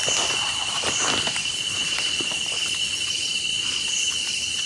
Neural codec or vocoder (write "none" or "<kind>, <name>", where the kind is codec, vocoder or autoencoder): none